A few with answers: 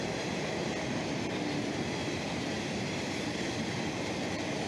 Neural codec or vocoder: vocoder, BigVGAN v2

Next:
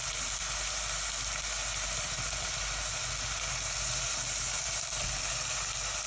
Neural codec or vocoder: none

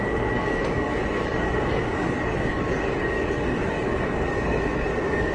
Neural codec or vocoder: codec, DAC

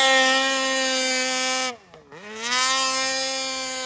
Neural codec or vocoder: none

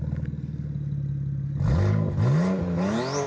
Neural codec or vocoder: none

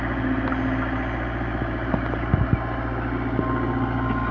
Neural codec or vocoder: none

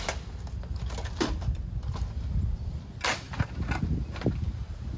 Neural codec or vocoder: none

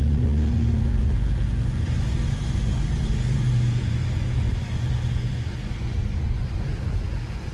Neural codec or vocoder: vocoder, Vocos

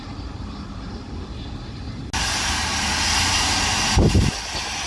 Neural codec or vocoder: none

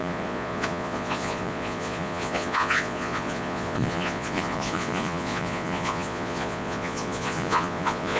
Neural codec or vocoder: vocoder, Vocos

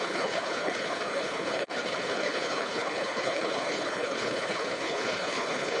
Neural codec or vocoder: codec, HILCodec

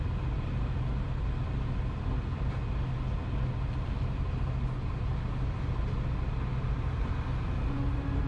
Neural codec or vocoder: none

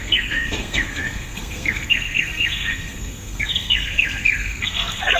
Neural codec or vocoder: codec, SNAC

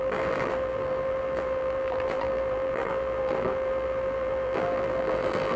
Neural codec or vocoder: vocoder, BigVGAN v2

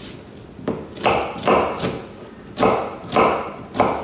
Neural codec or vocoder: none